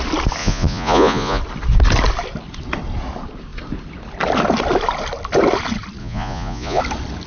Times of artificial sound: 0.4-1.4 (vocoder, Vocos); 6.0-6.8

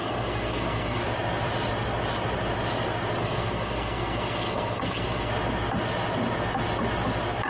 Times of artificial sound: 0.0-1.0 (codec, SNAC); 3.2-5.3

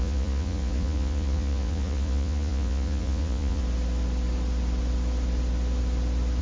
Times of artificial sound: 0.0-3.6 (vocoder, Vocos)

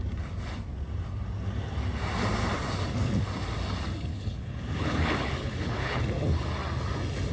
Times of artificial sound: 4.1-6.0 (codec, HILCodec)

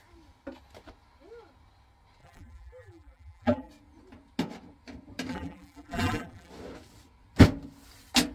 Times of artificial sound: 2.2-3.7 (vocoder, BigVGAN v2); 5.3-6.5

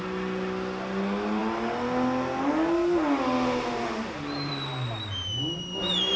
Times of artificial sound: none

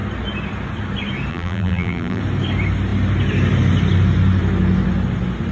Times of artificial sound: 1.3-2.2 (vocoder, BigVGAN v2)

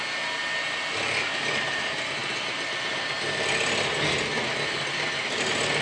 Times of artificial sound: none